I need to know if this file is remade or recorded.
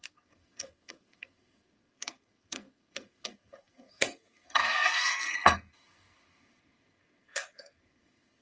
remade